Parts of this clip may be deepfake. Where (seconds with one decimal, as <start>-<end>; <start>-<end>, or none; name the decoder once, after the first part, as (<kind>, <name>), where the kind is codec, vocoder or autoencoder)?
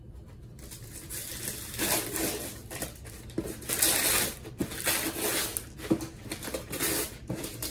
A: none